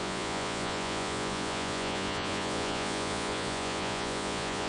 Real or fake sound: fake